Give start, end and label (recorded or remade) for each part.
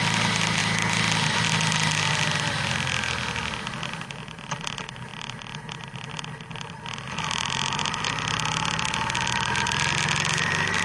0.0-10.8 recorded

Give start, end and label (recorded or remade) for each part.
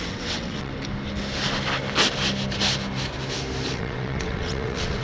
0.0-0.7 remade; 0.7-3.7 recorded; 3.7-5.0 remade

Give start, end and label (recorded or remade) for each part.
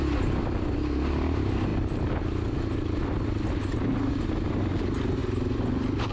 0.0-6.1 recorded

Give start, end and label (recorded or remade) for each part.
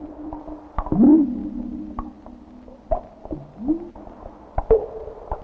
0.0-1.4 remade; 1.4-4.6 recorded; 4.6-5.4 remade